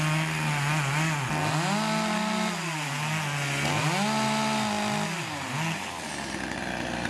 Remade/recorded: recorded